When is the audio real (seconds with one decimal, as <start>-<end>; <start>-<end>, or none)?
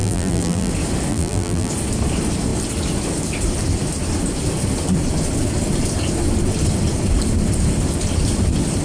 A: 0.7-1.1; 1.7-8.8